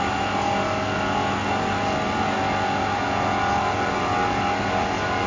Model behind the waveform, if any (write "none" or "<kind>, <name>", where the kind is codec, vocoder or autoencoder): none